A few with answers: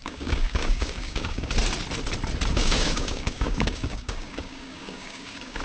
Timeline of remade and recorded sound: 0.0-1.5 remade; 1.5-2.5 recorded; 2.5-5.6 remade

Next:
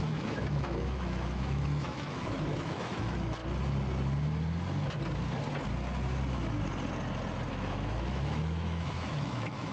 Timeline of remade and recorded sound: 0.0-3.4 remade; 3.4-7.5 recorded; 7.5-9.7 remade

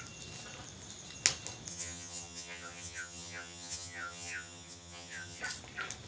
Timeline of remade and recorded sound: 0.0-1.7 recorded; 1.7-5.4 remade; 5.4-6.1 recorded

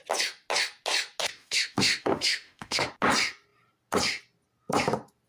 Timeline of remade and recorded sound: 0.0-1.2 recorded; 1.2-2.9 remade; 2.9-5.3 recorded

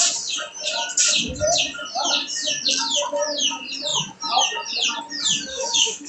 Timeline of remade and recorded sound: 0.0-5.5 recorded; 5.5-6.1 remade

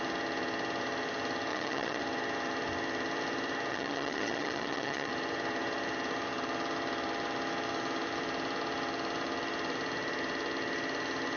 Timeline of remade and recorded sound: 0.0-1.5 recorded; 1.5-2.0 remade; 2.0-3.7 recorded; 3.7-5.1 remade; 5.1-11.4 recorded

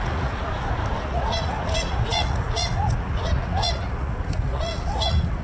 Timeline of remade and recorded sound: 0.0-0.5 remade; 0.5-1.0 recorded; 1.0-5.4 remade

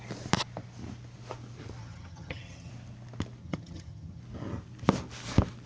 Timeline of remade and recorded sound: 0.0-1.8 recorded; 1.8-2.7 remade; 2.7-3.4 recorded; 3.4-4.2 remade; 4.2-5.7 recorded